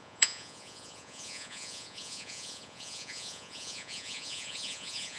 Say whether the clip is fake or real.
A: fake